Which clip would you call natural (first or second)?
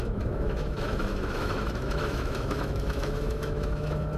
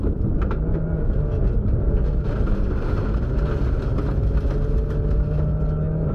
second